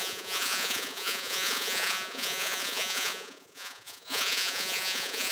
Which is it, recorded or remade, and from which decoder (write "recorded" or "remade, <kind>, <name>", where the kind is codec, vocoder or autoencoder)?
remade, vocoder, Vocos